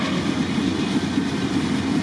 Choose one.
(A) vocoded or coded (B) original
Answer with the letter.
B